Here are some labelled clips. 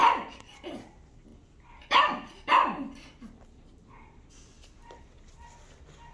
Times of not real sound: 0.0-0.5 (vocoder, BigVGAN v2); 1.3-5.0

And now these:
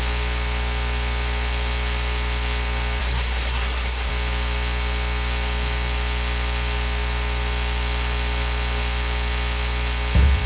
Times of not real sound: 3.0-4.1 (codec, SNAC)

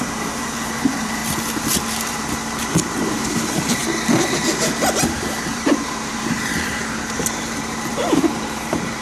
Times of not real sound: 0.0-1.2 (vocoder, BigVGAN v2); 2.1-3.8; 5.0-9.0

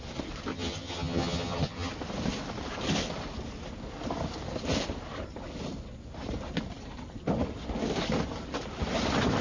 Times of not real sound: 0.5-1.9 (vocoder, HiFi-GAN)

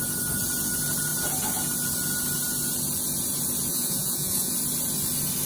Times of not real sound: 3.7-4.5 (vocoder, Vocos)

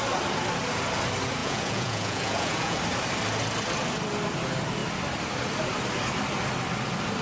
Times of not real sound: 1.4-2.8 (vocoder, Vocos)

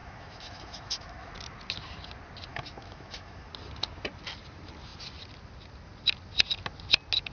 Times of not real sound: 0.0-1.3 (autoencoder, DAC-VAE); 2.5-3.5